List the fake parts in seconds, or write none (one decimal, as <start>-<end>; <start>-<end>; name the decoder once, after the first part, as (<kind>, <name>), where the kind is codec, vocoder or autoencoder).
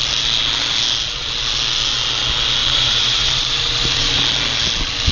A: 2.6-4.2 (vocoder, BigVGAN v2)